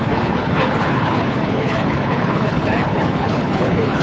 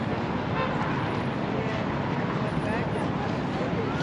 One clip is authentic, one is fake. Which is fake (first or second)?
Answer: first